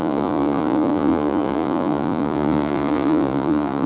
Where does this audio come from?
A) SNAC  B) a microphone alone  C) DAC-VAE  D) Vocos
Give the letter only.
D